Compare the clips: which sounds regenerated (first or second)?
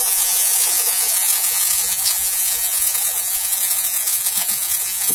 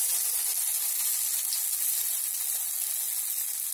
first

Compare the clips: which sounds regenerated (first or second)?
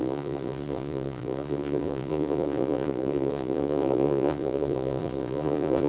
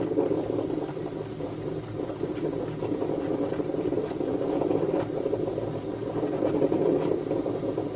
first